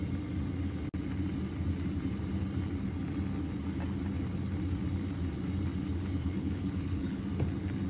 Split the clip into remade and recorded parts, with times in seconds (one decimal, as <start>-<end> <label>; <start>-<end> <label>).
0.0-5.9 recorded; 5.9-7.2 remade; 7.2-7.9 recorded